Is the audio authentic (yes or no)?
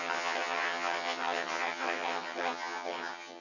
no